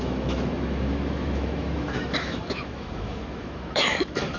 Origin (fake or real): fake